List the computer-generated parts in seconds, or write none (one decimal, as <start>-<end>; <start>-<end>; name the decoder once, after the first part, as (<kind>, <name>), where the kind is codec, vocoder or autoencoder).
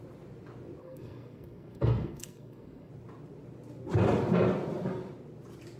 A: 0.8-2.9 (codec, SNAC)